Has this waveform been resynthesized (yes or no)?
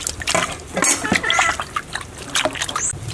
no